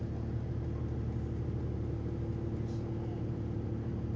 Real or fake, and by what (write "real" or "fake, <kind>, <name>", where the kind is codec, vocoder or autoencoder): real